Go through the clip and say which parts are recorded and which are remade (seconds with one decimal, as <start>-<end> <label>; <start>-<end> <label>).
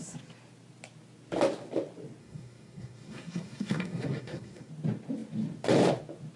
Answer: 0.0-2.2 recorded; 2.2-4.7 remade; 4.7-6.4 recorded